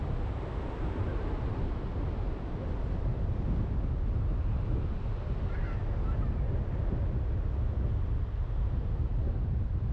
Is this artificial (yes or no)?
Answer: no